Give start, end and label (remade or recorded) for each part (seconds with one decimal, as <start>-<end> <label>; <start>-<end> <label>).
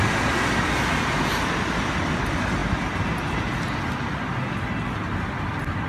0.0-5.9 recorded